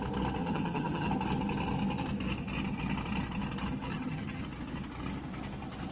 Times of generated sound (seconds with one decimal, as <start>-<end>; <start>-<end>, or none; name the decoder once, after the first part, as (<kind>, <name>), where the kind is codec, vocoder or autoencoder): 0.4-1.1 (vocoder, HiFi-GAN); 3.9-4.4